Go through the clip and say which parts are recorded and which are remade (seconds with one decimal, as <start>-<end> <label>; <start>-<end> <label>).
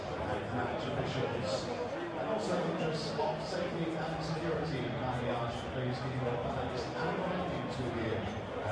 0.0-8.7 recorded